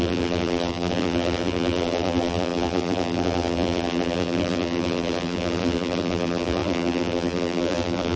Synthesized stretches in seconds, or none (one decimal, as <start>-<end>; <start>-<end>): 0.0-8.2